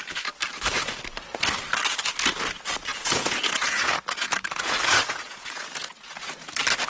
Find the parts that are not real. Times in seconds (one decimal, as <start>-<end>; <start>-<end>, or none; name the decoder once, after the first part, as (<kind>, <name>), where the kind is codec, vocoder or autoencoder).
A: 2.9-6.5 (vocoder, Vocos)